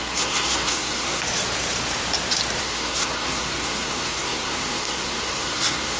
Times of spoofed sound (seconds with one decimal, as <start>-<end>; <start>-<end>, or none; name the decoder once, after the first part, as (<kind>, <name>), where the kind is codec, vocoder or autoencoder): 0.0-1.2 (codec, SNAC); 2.6-6.0